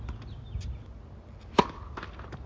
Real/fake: real